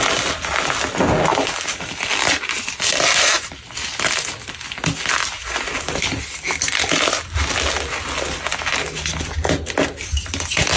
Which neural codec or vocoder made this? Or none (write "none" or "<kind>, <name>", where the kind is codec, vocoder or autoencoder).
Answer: none